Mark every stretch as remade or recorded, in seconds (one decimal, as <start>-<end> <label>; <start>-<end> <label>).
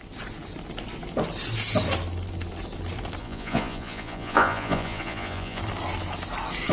0.0-3.2 recorded; 3.2-5.6 remade; 5.6-6.7 recorded